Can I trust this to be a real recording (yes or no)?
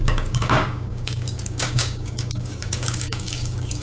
no